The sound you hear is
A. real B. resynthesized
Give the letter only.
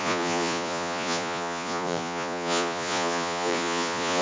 B